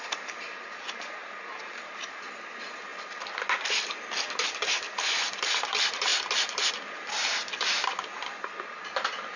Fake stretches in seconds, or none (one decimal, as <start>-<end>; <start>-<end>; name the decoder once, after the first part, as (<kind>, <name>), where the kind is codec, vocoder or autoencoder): none